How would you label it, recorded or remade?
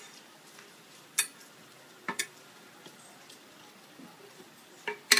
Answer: remade